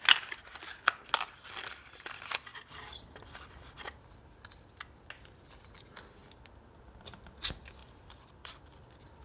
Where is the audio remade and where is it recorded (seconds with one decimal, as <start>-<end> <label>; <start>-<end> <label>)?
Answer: 0.0-2.5 recorded; 2.5-3.9 remade; 3.9-7.8 recorded; 7.8-8.7 remade; 8.7-9.2 recorded